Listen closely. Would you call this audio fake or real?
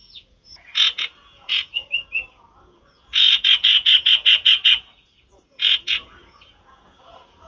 fake